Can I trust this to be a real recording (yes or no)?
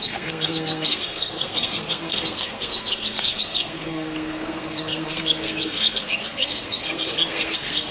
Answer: no